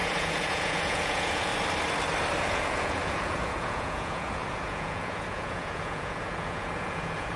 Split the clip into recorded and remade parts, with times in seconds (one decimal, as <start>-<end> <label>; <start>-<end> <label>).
0.0-1.5 remade; 1.5-2.4 recorded; 2.4-7.4 remade